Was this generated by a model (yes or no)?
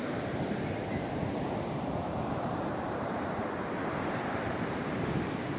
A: yes